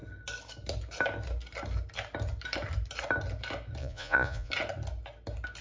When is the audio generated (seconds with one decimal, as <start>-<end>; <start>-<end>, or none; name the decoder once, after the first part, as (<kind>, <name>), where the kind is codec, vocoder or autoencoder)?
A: 3.8-4.5 (vocoder, Vocos)